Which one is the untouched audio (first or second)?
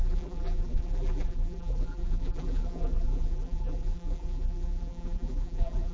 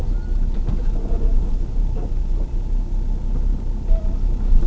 second